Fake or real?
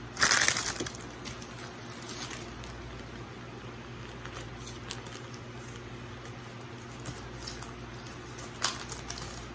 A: real